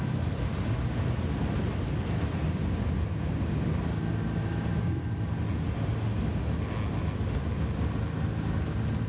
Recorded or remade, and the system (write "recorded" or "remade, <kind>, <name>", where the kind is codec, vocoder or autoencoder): recorded